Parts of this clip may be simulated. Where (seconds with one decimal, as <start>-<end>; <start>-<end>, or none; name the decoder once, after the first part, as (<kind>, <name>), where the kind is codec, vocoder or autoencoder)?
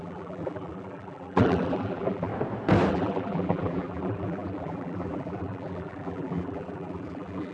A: 0.0-2.3 (vocoder, BigVGAN v2); 2.9-7.5